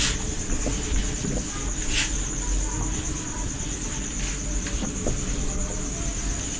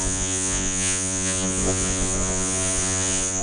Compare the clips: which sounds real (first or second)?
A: first